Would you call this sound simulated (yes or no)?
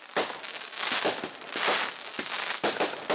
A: no